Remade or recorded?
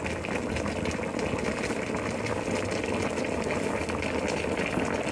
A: recorded